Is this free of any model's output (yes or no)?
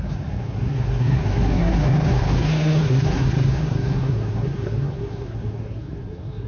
no